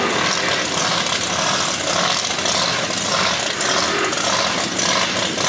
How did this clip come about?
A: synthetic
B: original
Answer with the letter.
B